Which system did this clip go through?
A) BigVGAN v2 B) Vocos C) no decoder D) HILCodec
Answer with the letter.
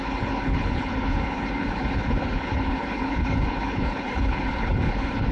D